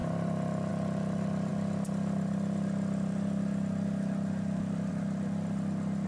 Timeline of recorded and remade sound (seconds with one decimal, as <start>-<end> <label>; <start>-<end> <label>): 0.0-6.1 recorded